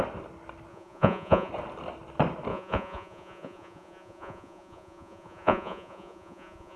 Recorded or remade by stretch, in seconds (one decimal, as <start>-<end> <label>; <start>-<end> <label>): 0.0-0.7 recorded; 0.7-1.5 remade; 1.5-2.5 recorded; 2.5-6.8 remade